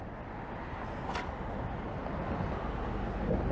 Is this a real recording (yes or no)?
yes